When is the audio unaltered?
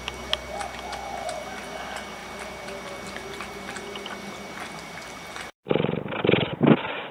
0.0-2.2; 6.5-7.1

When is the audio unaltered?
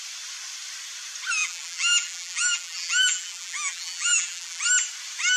0.0-1.4; 4.6-5.4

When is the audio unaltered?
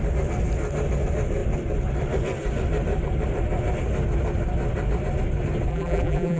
0.0-5.7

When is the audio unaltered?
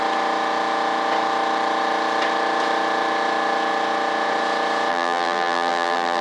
0.0-4.9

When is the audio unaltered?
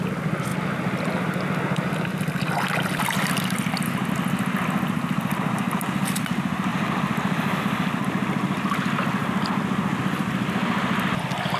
0.0-11.6